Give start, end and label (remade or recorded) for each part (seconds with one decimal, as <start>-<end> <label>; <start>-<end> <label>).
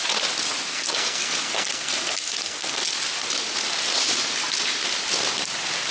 0.0-0.7 recorded; 0.7-2.8 remade; 2.8-5.9 recorded